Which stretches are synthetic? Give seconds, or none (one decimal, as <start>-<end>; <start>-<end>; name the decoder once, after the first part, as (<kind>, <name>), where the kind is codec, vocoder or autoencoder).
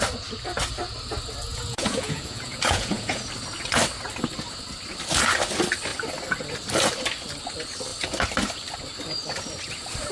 1.5-3.2 (vocoder, Vocos)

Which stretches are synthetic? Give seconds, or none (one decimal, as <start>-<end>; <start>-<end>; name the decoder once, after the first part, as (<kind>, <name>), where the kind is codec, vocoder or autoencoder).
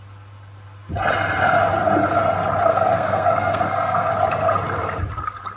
2.7-4.1 (codec, SNAC)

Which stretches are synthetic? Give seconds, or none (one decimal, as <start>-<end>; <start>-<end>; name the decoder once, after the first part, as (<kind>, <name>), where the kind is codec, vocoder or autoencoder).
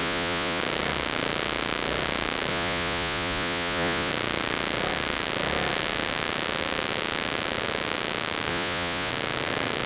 0.0-0.6 (vocoder, Vocos); 2.5-4.1; 8.5-9.1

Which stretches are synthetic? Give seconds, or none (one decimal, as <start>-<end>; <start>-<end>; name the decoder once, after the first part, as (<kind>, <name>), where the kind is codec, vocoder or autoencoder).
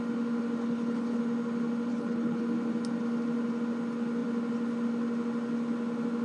0.6-1.2 (codec, HILCodec); 1.9-2.4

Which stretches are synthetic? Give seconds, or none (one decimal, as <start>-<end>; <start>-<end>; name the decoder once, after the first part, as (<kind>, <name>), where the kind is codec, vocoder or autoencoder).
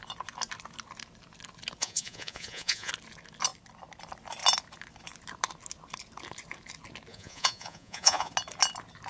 1.8-2.9 (vocoder, Vocos); 7.1-8.3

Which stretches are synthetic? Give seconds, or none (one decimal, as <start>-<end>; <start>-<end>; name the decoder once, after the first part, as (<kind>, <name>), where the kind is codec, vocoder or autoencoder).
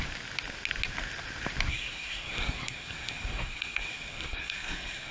1.7-5.1 (codec, SNAC)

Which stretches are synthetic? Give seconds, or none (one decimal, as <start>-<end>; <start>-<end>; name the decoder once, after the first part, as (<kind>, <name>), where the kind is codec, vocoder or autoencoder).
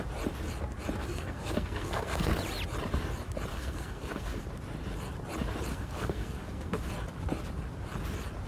1.0-2.3 (codec, SNAC); 3.5-4.4; 5.7-6.9